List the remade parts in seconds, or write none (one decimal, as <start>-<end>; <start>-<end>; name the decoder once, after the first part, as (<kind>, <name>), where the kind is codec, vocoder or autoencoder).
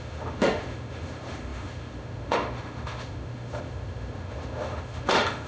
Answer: 0.0-5.5 (autoencoder, DAC-VAE)